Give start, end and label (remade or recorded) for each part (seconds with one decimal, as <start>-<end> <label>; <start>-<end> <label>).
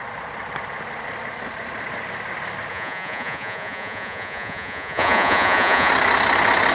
0.0-2.7 recorded; 2.7-5.9 remade; 5.9-6.7 recorded